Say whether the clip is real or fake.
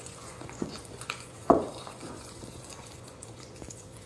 fake